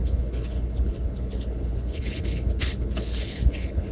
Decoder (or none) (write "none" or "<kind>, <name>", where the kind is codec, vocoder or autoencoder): codec, HILCodec